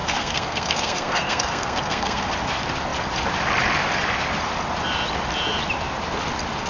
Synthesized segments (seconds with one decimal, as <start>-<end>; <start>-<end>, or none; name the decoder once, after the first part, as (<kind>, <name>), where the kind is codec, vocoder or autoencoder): 0.0-2.3 (codec, SNAC)